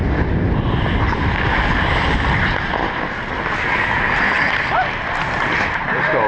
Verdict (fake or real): real